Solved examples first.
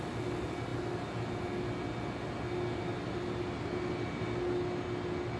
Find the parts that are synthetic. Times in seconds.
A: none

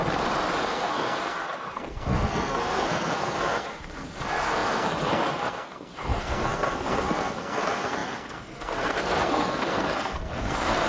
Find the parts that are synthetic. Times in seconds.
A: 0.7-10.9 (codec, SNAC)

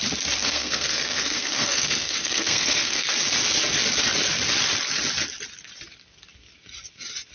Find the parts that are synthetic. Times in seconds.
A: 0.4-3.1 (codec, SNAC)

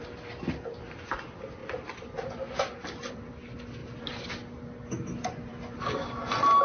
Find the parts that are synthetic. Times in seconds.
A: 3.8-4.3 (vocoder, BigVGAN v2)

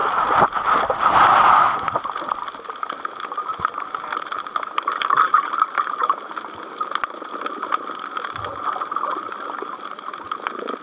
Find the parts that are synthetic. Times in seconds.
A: 0.0-2.3 (vocoder, BigVGAN v2); 3.5-8.1